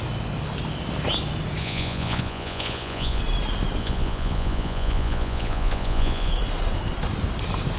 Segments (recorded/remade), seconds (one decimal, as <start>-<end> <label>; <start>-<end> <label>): 0.0-1.6 recorded; 1.6-3.2 remade; 3.2-3.8 recorded; 3.8-6.3 remade; 6.3-7.8 recorded